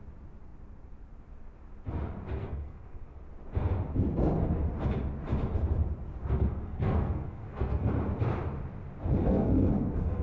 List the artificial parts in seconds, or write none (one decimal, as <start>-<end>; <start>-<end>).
2.4-3.2; 6.2-7.9; 9.2-10.2